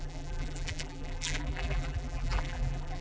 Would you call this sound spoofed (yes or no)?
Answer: yes